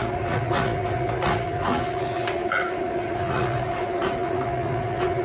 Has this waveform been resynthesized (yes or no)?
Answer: yes